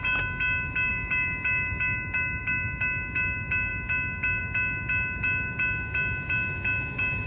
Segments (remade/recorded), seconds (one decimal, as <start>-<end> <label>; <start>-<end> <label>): 0.0-7.3 recorded